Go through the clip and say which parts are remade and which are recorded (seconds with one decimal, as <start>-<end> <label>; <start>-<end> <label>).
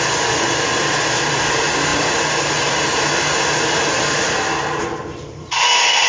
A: 0.0-6.1 recorded